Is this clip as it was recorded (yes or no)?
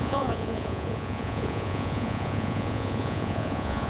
no